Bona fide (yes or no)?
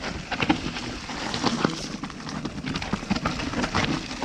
yes